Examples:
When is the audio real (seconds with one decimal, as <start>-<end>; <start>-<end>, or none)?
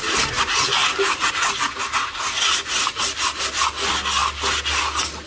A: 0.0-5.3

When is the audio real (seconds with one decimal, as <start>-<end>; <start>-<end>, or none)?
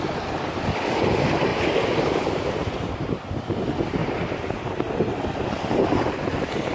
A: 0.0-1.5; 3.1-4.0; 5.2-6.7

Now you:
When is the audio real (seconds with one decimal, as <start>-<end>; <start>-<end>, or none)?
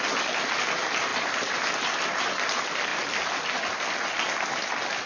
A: 0.0-1.1; 1.6-2.9; 3.5-5.1